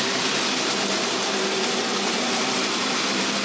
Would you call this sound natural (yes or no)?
no